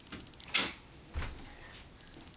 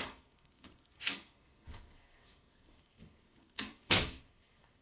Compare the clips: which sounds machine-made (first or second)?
second